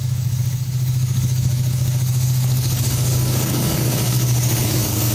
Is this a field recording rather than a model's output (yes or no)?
no